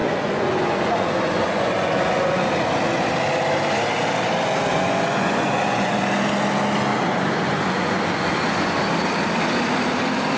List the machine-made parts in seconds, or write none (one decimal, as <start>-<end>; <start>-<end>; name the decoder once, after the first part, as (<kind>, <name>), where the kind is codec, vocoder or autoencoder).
0.0-2.5 (vocoder, Vocos); 4.7-6.0; 6.9-8.8